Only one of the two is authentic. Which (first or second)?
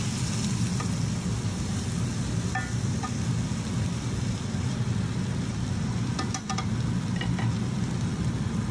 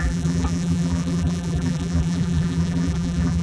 first